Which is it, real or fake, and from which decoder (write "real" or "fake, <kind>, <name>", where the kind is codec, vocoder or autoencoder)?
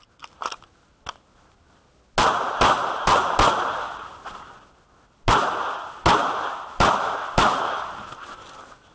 real